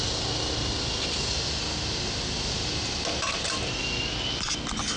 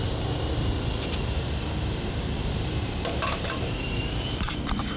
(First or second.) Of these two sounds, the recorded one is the first